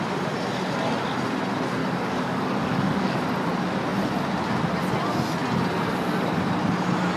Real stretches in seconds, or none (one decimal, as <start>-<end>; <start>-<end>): 0.0-1.8; 3.2-7.2

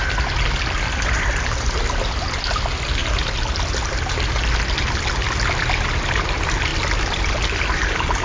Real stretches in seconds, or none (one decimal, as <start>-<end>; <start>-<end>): 0.0-8.2

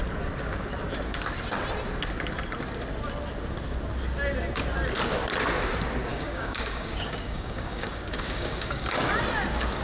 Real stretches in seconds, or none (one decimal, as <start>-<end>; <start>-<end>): 0.0-6.1; 9.1-9.8

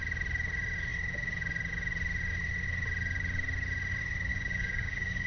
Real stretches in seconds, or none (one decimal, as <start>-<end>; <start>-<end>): 0.0-4.3